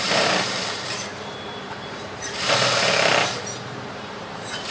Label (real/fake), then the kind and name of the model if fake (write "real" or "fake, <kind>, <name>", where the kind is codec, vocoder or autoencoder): fake, vocoder, BigVGAN v2